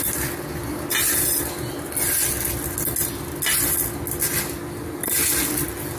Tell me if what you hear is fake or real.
real